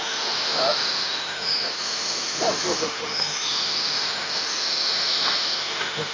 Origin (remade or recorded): remade